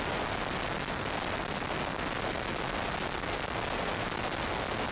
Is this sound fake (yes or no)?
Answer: no